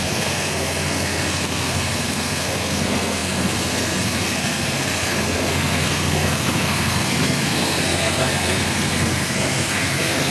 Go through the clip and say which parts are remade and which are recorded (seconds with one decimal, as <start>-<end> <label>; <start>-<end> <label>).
0.0-10.3 remade